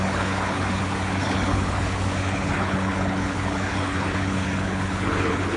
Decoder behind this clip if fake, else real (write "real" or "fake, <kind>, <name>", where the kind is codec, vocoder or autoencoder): fake, codec, HILCodec